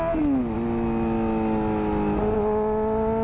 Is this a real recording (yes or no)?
yes